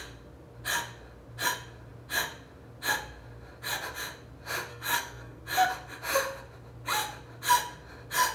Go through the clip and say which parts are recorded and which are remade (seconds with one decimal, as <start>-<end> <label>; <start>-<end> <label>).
0.0-4.7 recorded; 4.7-5.4 remade; 5.4-8.3 recorded